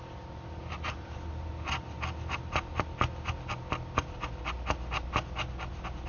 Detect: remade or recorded recorded